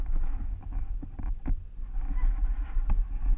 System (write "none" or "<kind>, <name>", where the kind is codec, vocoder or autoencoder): none